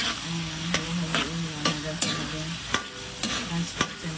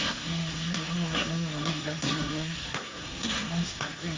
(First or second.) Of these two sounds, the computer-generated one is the second